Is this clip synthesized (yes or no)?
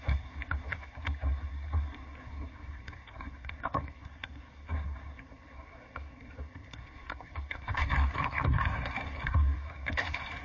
yes